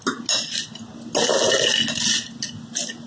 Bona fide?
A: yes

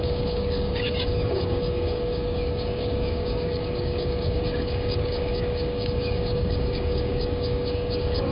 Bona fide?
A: no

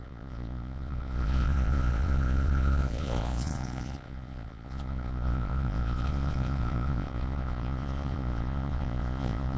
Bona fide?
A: no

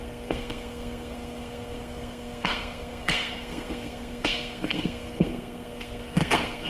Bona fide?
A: no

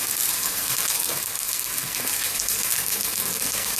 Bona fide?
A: no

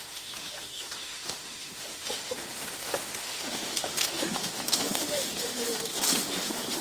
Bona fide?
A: no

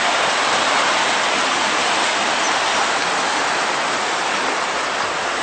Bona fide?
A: yes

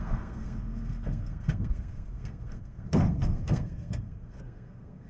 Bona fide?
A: no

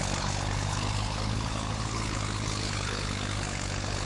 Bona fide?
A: no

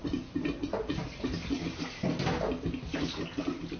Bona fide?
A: yes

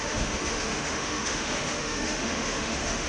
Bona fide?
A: no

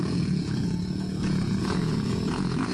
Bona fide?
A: no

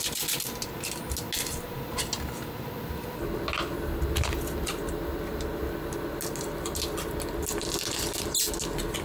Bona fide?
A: yes